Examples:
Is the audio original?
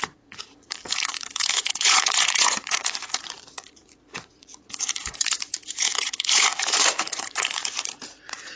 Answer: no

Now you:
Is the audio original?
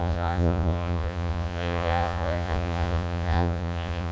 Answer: no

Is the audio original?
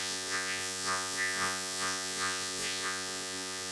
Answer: no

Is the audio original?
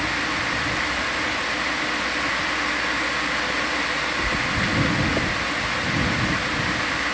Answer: yes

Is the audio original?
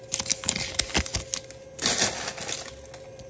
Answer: yes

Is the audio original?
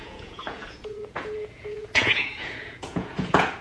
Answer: no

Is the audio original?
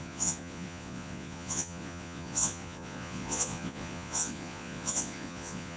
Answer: no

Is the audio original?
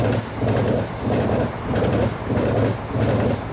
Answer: yes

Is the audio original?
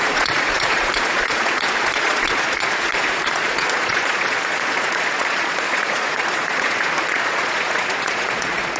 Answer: no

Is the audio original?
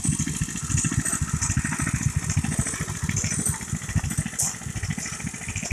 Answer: yes